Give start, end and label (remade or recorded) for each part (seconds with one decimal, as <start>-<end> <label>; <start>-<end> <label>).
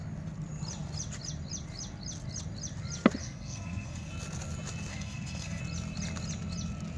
0.0-3.2 recorded; 3.2-4.1 remade; 4.1-4.9 recorded; 4.9-5.6 remade; 5.6-7.0 recorded